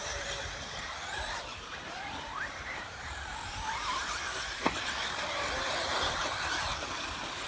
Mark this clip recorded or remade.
remade